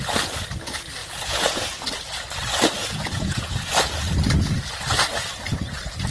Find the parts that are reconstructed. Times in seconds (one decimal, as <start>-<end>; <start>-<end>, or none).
1.0-1.9; 2.8-3.7